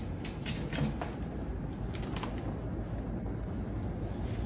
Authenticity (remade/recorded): recorded